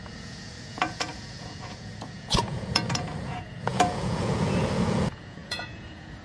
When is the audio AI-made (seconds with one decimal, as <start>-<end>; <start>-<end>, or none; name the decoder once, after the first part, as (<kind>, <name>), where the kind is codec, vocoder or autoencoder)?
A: 0.0-6.2 (vocoder, Vocos)